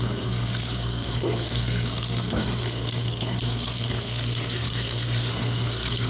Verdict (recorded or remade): remade